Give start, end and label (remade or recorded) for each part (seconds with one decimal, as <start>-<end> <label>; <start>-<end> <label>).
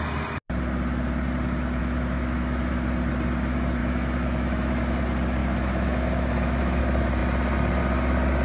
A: 0.0-1.8 recorded; 1.8-2.7 remade; 2.7-3.8 recorded; 3.8-5.0 remade; 5.0-5.4 recorded; 5.4-6.8 remade; 6.8-8.4 recorded